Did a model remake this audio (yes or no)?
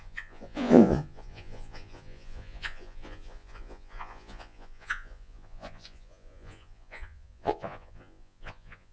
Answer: yes